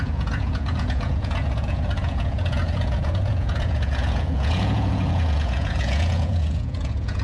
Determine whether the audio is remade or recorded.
remade